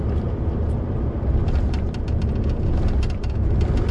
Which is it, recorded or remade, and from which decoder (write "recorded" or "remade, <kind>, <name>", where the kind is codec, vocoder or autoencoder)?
recorded